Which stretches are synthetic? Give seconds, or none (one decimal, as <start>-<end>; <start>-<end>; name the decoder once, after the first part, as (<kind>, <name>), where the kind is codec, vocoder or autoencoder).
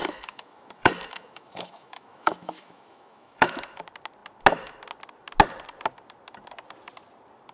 0.0-3.8 (autoencoder, DAC-VAE)